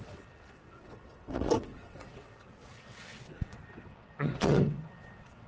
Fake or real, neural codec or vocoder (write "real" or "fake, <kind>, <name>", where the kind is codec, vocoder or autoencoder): fake, vocoder, WaveNeXt